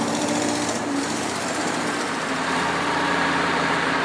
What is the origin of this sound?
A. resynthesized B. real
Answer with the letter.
A